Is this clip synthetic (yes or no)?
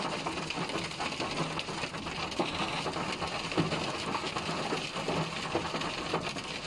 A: no